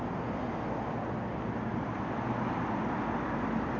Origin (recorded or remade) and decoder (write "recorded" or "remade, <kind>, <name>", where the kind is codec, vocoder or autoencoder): recorded